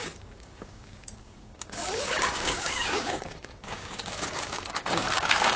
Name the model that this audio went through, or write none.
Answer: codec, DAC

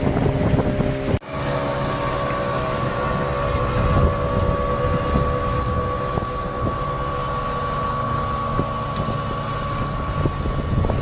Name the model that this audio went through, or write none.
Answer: none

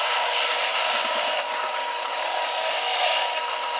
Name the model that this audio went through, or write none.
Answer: codec, DAC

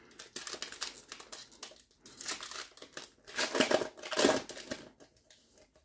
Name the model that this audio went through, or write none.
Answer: none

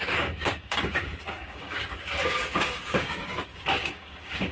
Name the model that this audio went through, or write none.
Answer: codec, DAC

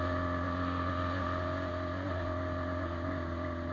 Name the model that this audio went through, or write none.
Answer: none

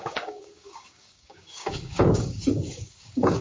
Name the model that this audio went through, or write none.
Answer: codec, DAC